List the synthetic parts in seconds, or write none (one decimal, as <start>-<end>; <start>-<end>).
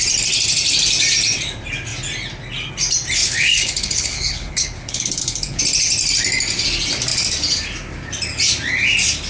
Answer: 3.2-5.6